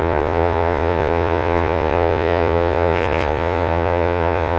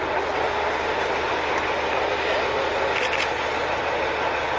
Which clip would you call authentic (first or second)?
second